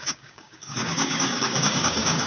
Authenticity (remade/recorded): remade